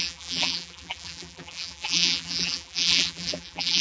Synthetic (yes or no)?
yes